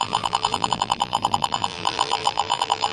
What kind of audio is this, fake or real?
fake